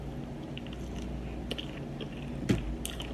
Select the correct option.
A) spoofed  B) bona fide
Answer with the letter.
B